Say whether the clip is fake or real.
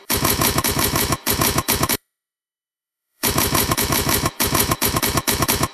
fake